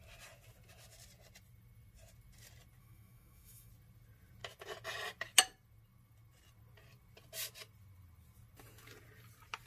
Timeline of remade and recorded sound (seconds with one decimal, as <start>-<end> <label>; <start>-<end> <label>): 0.0-2.8 recorded; 2.8-3.7 remade; 3.7-9.7 recorded

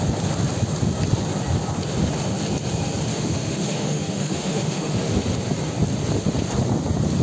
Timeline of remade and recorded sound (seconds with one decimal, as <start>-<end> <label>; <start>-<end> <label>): 0.0-3.1 recorded; 3.1-5.2 remade; 5.2-7.2 recorded

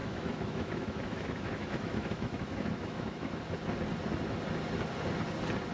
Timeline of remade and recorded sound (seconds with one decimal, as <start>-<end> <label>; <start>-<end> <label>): 0.0-3.4 remade; 3.4-5.7 recorded

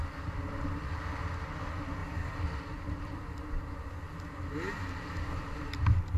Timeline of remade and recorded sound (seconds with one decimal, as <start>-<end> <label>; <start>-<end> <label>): 0.0-6.2 recorded

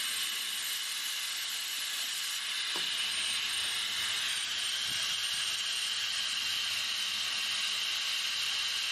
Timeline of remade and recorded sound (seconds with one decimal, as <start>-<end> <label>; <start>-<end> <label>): 0.0-8.9 recorded

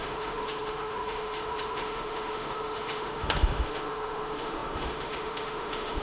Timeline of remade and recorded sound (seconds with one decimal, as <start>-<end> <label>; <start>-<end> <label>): 0.0-6.0 remade

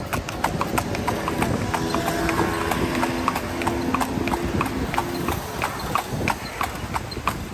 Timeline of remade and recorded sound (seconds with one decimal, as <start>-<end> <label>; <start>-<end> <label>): 0.0-7.5 recorded